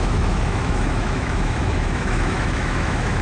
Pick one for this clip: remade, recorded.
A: remade